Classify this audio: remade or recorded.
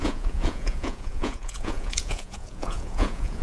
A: remade